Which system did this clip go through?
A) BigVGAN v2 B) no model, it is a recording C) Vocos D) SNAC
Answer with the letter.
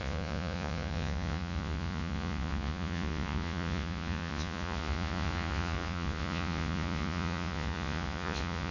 C